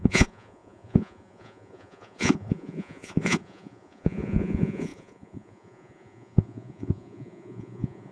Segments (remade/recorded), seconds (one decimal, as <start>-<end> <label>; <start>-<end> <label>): 0.0-8.1 remade